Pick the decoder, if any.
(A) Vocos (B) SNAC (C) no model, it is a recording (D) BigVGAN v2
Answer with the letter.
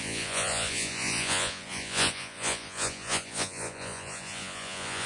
A